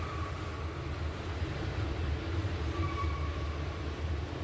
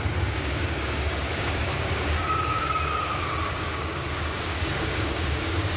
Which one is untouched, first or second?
first